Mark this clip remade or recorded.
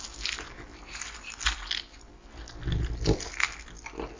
recorded